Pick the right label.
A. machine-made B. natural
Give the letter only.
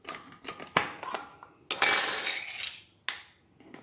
B